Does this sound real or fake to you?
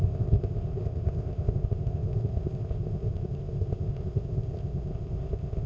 fake